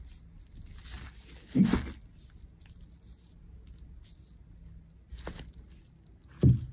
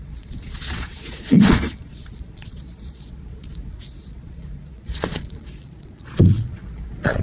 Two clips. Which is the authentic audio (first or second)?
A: first